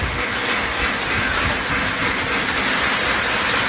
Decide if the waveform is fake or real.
real